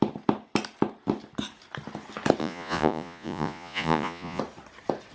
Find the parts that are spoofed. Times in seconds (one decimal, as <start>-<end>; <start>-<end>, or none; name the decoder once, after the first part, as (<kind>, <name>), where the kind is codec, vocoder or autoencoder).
2.4-4.4 (vocoder, Vocos)